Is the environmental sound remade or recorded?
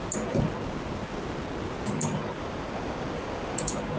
recorded